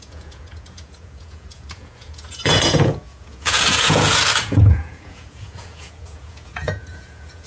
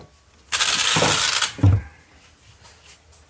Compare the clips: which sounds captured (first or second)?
second